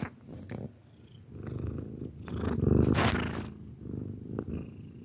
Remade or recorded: recorded